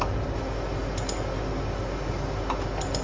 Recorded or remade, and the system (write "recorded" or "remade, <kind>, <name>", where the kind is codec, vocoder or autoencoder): recorded